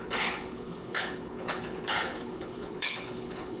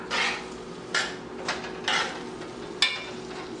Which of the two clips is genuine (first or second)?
second